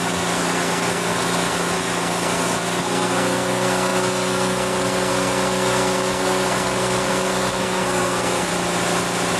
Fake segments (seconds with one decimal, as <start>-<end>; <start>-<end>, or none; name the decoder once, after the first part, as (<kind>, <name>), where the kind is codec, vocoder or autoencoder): 0.0-8.5 (codec, SNAC)